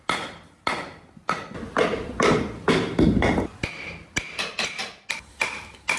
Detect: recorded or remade recorded